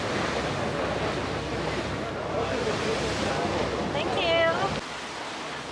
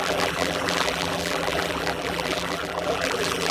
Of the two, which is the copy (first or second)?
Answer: second